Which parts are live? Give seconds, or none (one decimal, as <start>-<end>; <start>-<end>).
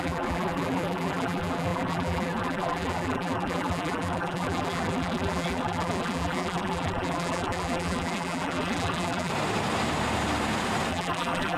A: 9.3-10.9